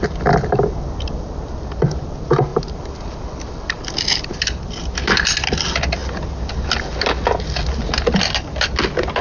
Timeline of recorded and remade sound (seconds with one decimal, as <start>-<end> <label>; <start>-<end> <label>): 0.0-9.2 recorded